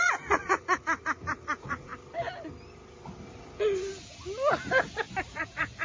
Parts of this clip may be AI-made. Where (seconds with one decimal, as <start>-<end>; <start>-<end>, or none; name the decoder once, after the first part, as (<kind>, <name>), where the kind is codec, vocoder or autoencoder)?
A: 0.0-1.9 (vocoder, Vocos); 5.2-5.8